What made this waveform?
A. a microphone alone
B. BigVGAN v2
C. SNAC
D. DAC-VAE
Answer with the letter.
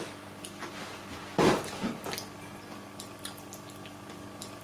A